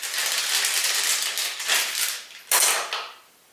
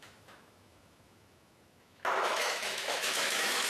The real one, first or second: first